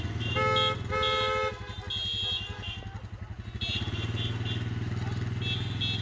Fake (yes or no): no